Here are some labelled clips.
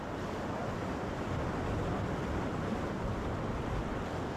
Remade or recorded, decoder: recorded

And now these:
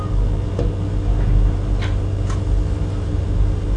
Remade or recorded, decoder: recorded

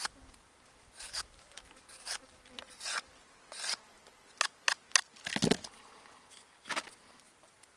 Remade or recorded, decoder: recorded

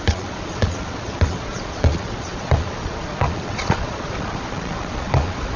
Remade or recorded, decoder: remade, vocoder, Vocos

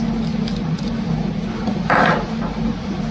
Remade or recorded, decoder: recorded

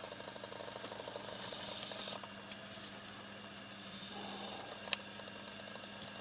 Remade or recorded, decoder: recorded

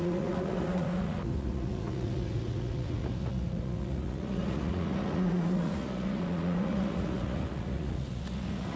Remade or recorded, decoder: remade, vocoder, Vocos